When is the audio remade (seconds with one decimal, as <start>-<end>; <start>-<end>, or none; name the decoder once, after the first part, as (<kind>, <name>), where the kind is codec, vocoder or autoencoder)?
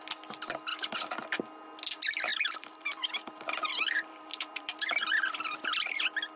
0.7-1.4 (vocoder, BigVGAN v2); 2.3-6.0